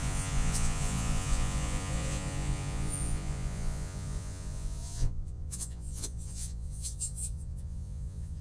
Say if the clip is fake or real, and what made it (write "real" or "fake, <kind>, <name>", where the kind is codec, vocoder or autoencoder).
fake, vocoder, Vocos